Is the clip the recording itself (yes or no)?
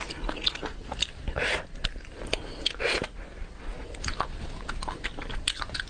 yes